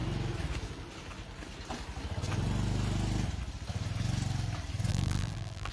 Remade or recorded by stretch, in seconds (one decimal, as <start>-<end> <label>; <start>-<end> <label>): 0.0-4.9 recorded; 4.9-5.7 remade